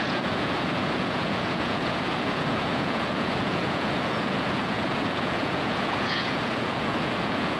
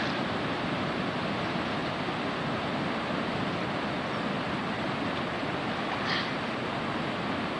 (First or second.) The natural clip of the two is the second